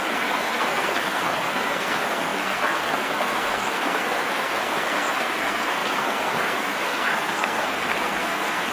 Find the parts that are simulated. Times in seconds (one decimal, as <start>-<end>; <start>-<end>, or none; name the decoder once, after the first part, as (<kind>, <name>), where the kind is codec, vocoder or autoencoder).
0.0-8.7 (codec, SNAC)